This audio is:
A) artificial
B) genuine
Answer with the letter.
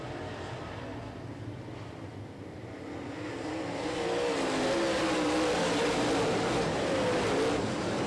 B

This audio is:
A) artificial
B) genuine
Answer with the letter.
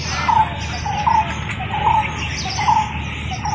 B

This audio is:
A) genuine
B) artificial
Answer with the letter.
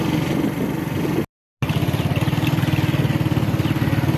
A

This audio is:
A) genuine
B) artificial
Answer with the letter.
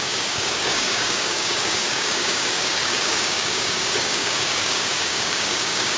B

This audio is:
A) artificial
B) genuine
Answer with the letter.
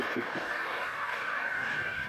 A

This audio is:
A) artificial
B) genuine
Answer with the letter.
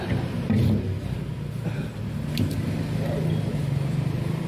B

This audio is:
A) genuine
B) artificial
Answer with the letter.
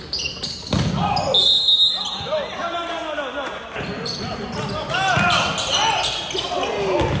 A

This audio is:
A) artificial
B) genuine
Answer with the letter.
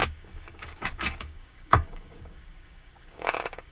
A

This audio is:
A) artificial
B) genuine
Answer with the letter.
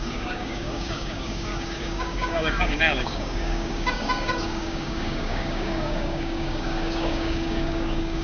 A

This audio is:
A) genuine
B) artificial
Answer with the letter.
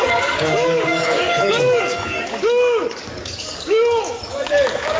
B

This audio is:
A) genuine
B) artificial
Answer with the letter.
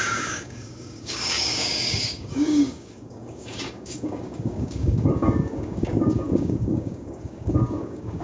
B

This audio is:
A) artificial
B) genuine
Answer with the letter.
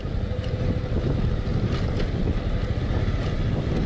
B